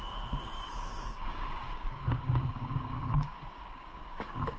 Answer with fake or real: fake